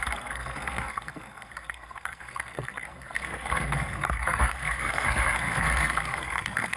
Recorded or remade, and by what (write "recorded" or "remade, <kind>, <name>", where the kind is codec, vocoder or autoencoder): remade, codec, SNAC